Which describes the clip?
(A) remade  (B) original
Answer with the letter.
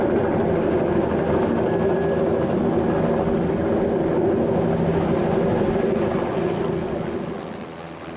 B